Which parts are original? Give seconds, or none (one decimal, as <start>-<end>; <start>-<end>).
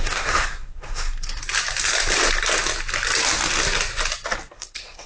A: 1.4-4.5